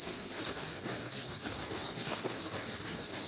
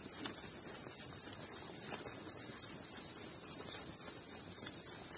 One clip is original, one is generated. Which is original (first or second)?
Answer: second